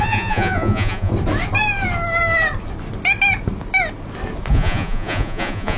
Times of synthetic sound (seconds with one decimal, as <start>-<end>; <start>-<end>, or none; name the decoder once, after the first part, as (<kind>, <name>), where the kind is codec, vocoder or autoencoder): 0.0-1.1 (vocoder, Vocos); 4.5-5.8